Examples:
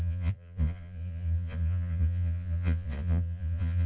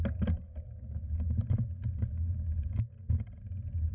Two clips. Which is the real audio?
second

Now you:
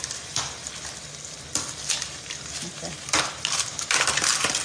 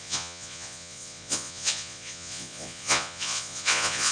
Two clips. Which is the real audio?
first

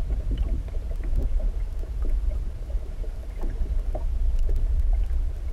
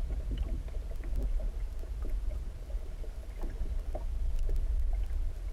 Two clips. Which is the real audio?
second